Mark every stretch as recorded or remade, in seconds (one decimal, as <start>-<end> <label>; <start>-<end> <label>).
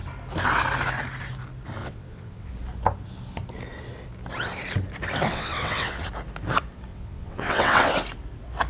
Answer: 0.0-1.8 recorded; 1.8-2.5 remade; 2.5-5.3 recorded; 5.3-6.0 remade; 6.0-6.9 recorded; 6.9-7.9 remade; 7.9-8.7 recorded